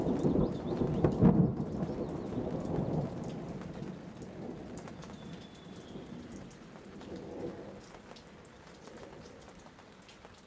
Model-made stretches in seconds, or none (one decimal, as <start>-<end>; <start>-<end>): none